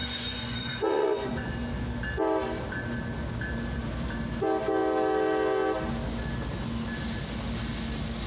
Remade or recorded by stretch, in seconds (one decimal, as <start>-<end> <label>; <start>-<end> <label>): 0.0-1.5 remade; 1.5-8.3 recorded